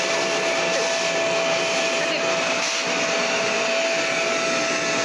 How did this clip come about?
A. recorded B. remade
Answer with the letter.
A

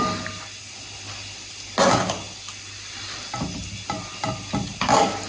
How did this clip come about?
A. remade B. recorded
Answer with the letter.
B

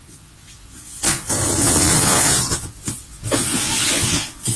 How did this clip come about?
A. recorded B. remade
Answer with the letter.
B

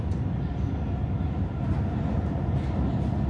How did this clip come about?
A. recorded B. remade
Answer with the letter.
A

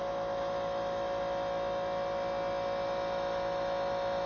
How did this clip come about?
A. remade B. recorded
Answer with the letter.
B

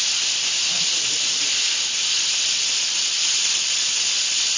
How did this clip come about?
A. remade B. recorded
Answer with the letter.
A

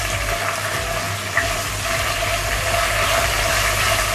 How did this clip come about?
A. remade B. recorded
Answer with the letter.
B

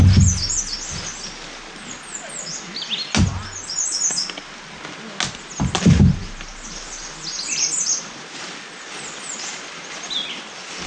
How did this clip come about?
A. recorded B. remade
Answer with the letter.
A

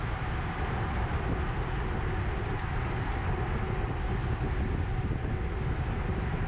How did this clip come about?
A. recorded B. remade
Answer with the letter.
A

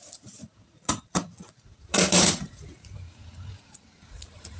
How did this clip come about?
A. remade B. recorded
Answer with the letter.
A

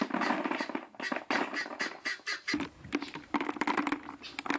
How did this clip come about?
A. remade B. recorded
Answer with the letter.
B